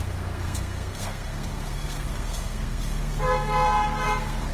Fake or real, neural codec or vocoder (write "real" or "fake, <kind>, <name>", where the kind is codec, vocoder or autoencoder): fake, codec, SNAC